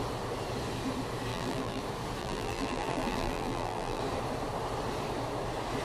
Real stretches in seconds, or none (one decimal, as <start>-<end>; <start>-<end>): 0.0-1.3; 1.8-2.2; 4.0-5.8